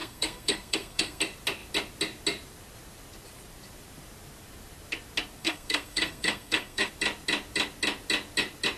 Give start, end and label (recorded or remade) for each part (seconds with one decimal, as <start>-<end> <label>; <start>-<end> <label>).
0.0-1.2 remade; 1.2-5.4 recorded; 5.4-6.9 remade; 6.9-8.8 recorded